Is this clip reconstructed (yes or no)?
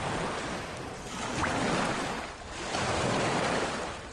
no